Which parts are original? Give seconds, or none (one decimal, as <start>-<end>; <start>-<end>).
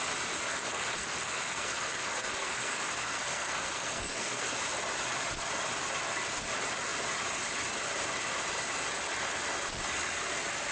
0.0-0.5; 4.6-10.7